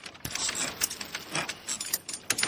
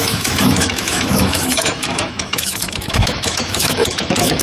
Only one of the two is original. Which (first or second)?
first